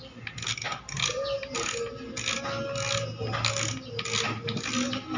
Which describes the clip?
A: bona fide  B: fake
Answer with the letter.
A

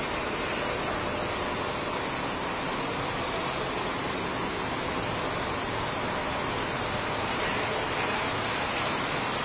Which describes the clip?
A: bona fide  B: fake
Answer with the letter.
A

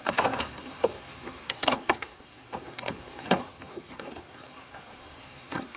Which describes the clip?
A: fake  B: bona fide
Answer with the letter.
A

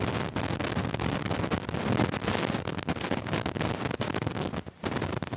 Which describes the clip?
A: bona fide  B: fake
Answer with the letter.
A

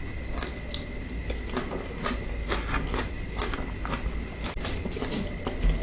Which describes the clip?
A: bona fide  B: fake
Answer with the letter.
A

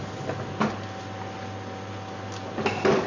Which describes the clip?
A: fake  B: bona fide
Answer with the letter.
B